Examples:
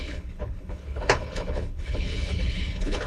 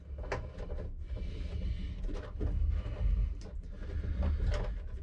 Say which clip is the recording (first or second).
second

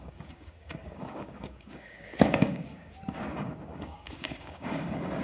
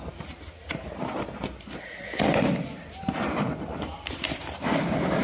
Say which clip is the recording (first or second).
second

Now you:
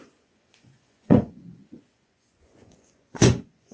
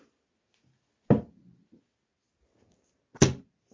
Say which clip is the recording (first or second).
second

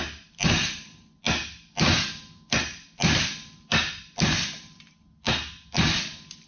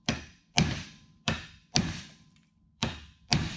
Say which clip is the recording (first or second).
first